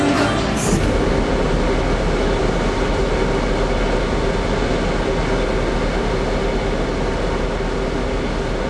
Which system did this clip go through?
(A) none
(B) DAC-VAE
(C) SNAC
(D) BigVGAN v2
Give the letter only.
A